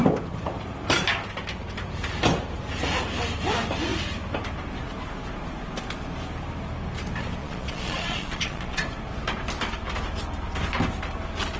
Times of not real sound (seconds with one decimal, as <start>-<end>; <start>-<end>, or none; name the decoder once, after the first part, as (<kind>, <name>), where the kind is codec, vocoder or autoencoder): 7.4-8.8 (vocoder, Vocos)